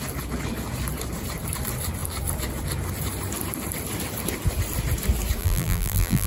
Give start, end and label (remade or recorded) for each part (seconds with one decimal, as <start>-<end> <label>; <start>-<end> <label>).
0.0-5.4 recorded; 5.4-6.3 remade